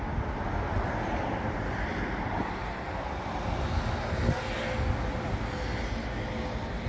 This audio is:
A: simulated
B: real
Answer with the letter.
B